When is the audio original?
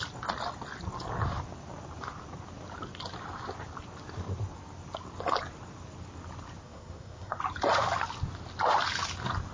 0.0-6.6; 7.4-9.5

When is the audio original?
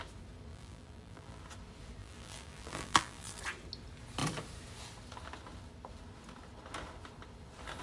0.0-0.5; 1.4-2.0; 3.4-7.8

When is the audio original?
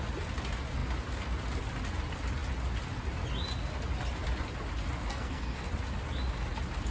0.0-5.1; 5.7-6.9